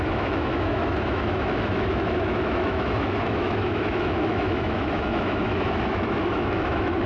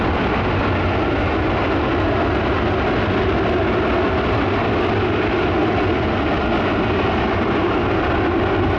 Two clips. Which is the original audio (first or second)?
second